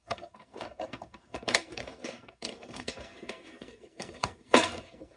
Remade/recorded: remade